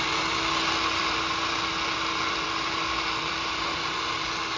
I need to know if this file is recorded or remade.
remade